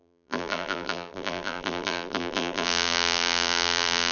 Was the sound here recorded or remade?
remade